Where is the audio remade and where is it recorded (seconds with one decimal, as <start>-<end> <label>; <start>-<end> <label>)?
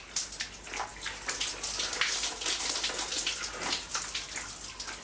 0.0-5.0 recorded